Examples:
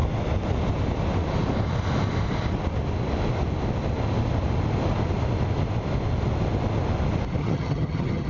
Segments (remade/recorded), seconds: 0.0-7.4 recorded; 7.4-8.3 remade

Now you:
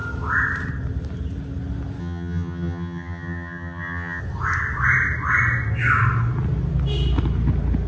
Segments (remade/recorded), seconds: 0.0-2.0 recorded; 2.0-4.2 remade; 4.2-7.9 recorded